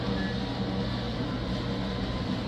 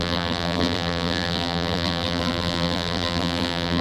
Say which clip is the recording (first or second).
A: first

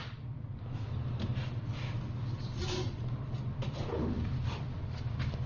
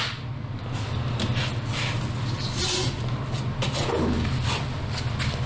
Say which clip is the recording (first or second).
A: second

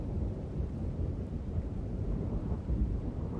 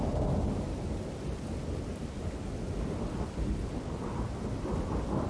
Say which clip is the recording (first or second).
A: second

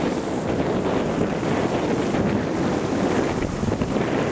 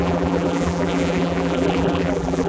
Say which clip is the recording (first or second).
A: first